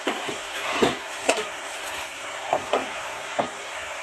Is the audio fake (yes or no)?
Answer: yes